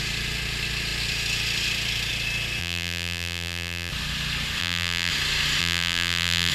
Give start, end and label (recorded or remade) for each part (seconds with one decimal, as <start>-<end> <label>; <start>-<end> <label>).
0.0-2.6 recorded; 2.6-3.9 remade; 3.9-4.6 recorded; 4.6-5.1 remade; 5.1-5.6 recorded; 5.6-6.5 remade